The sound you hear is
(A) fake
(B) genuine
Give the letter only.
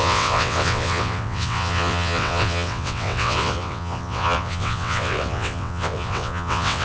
A